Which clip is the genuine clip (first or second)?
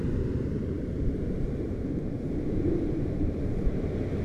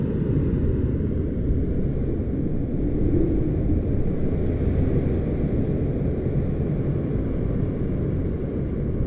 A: second